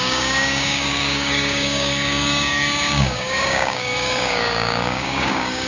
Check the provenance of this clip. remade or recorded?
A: remade